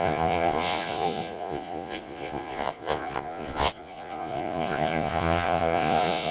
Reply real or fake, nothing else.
fake